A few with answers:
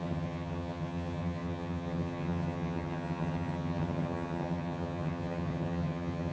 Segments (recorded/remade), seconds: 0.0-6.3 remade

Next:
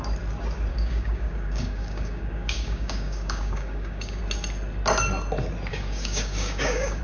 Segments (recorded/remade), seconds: 0.0-0.7 recorded; 0.7-4.2 remade; 4.2-5.7 recorded; 5.7-7.0 remade

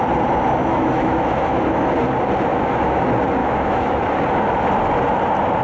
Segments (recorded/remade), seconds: 0.0-0.7 recorded; 0.7-1.8 remade; 1.8-2.5 recorded; 2.5-3.0 remade; 3.0-3.4 recorded; 3.4-4.0 remade; 4.0-5.6 recorded

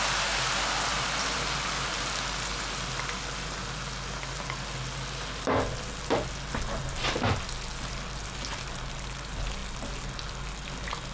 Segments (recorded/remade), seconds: 0.0-0.9 recorded; 0.9-2.1 remade; 2.1-11.1 recorded